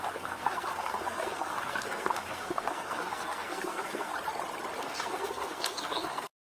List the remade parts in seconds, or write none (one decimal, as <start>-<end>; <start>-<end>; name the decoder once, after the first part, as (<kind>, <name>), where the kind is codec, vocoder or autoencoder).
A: 0.0-4.1 (codec, SNAC); 4.8-6.5